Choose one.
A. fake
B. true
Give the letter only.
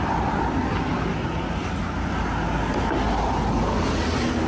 B